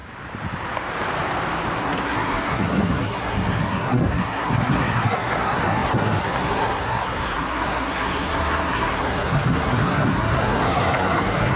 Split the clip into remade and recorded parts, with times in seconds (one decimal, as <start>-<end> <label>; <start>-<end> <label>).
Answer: 0.0-1.8 recorded; 1.8-11.6 remade